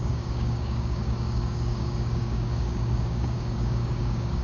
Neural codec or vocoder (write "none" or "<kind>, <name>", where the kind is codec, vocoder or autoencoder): codec, DAC